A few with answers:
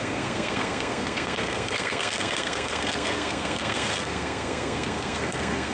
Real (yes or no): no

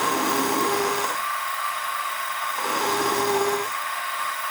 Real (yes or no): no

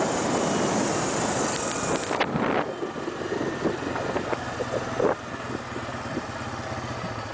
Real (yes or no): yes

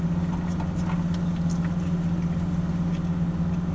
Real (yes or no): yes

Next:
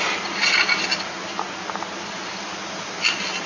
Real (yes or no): yes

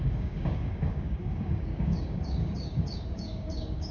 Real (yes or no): no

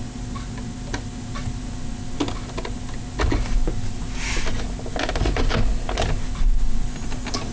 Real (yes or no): yes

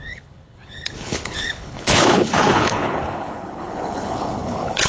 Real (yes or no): no